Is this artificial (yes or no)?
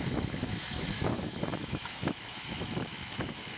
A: yes